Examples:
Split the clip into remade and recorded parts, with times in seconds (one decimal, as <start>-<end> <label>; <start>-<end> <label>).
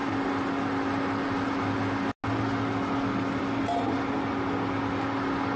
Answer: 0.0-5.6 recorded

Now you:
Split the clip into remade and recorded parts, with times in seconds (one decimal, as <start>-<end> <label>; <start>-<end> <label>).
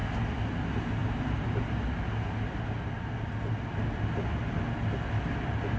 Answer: 0.0-5.8 recorded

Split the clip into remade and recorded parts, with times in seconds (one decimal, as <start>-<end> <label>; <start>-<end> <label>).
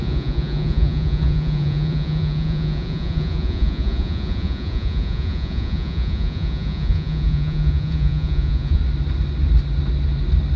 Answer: 0.0-8.8 remade; 8.8-10.6 recorded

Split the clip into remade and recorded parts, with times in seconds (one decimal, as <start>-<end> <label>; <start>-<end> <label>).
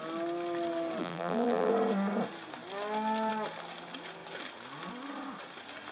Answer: 0.0-1.0 recorded; 1.0-1.7 remade; 1.7-5.9 recorded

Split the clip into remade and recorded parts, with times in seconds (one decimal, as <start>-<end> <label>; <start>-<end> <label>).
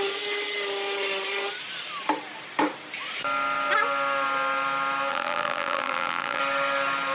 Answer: 0.0-5.1 recorded; 5.1-6.4 remade; 6.4-7.1 recorded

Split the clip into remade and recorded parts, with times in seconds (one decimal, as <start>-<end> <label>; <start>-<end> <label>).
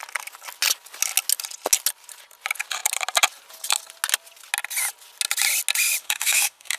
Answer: 0.0-6.0 recorded; 6.0-6.8 remade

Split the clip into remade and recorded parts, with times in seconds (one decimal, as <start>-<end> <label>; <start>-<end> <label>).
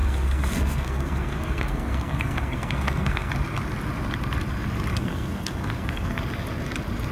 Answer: 0.0-3.3 remade; 3.3-4.9 recorded; 4.9-6.2 remade; 6.2-7.1 recorded